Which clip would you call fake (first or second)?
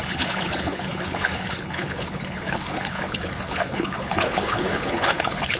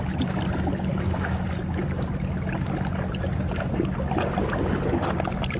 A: first